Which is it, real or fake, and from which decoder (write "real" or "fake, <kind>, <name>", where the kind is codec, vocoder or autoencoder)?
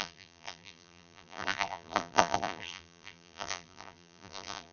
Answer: fake, vocoder, BigVGAN v2